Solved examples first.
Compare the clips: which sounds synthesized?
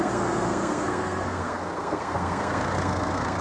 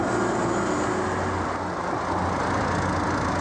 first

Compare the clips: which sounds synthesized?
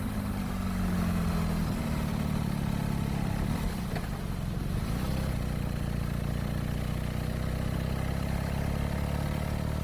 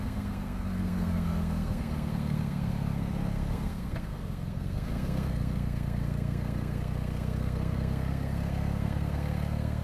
second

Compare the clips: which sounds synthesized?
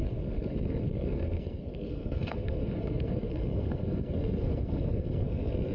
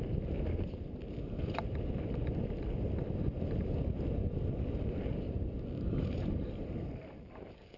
first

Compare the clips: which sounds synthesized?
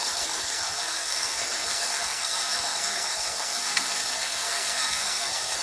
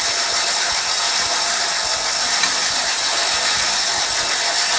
first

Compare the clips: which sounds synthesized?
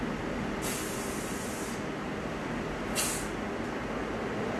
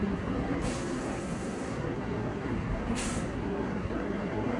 second